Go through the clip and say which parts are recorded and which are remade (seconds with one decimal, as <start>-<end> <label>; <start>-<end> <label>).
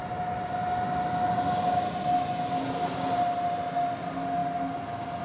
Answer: 0.0-5.2 recorded